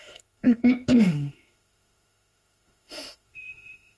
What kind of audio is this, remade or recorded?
remade